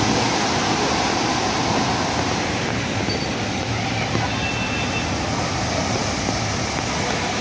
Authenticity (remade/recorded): recorded